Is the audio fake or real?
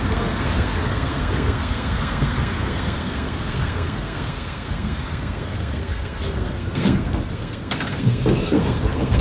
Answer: fake